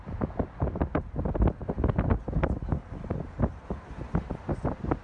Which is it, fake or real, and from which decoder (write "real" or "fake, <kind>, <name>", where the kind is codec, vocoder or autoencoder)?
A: real